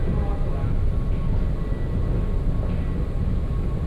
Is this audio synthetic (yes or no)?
no